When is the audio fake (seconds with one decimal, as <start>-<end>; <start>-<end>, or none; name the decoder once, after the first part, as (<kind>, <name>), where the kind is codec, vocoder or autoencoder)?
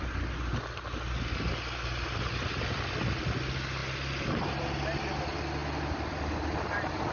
none